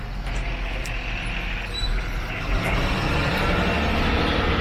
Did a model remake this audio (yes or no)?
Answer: no